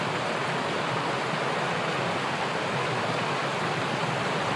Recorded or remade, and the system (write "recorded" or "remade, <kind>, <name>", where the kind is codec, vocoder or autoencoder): recorded